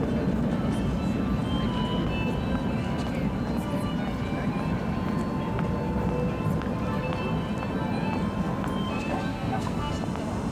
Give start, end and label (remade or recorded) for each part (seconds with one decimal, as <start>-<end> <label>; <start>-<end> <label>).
0.0-9.1 recorded; 9.1-9.9 remade; 9.9-10.5 recorded